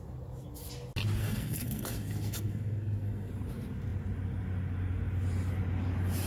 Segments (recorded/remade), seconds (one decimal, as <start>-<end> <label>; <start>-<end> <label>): 0.0-1.2 recorded; 1.2-3.3 remade; 3.3-6.3 recorded

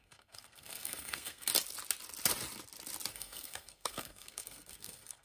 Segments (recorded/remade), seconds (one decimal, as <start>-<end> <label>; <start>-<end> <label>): 0.0-1.5 remade; 1.5-3.1 recorded; 3.1-5.2 remade

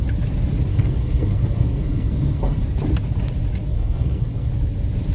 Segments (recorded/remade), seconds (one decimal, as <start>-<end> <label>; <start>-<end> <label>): 0.0-0.7 recorded; 0.7-2.6 remade; 2.6-3.7 recorded; 3.7-4.5 remade; 4.5-5.1 recorded

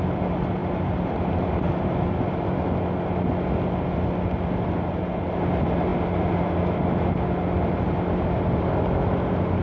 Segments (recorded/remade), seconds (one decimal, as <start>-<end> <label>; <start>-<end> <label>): 0.0-9.6 recorded

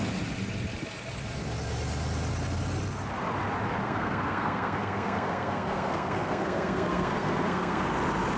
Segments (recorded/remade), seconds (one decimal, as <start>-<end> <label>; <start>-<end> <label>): 0.0-3.8 recorded; 3.8-7.9 remade; 7.9-8.4 recorded

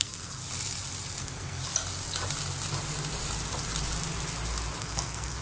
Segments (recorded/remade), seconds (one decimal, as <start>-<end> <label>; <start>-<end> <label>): 0.0-0.4 remade; 0.4-1.2 recorded; 1.2-1.6 remade; 1.6-4.8 recorded; 4.8-5.4 remade

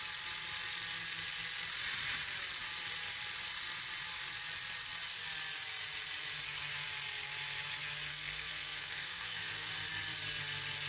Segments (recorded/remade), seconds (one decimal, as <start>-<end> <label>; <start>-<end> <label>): 0.0-8.1 recorded; 8.1-9.7 remade; 9.7-10.9 recorded

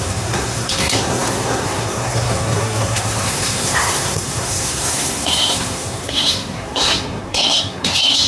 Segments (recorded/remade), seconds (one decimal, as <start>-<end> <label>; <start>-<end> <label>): 0.0-8.3 remade